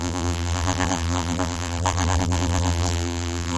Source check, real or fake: fake